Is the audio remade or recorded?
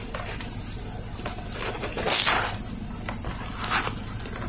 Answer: recorded